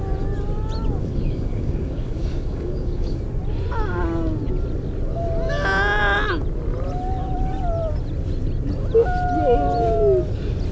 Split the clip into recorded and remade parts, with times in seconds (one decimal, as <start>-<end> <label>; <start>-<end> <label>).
0.0-1.0 recorded; 1.0-3.2 remade; 3.2-10.7 recorded